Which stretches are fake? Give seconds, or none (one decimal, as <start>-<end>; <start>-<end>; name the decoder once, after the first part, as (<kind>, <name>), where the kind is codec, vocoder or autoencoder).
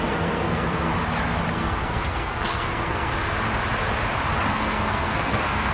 0.0-0.9 (codec, SNAC); 1.5-3.1; 4.5-5.7